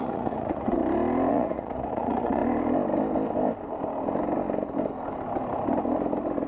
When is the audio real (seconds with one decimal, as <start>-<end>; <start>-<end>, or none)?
0.8-1.3; 2.4-6.5